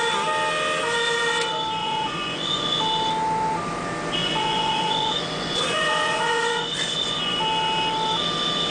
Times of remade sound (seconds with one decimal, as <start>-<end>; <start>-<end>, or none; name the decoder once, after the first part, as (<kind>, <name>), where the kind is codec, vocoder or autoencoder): 1.8-2.8 (vocoder, Vocos); 4.2-7.4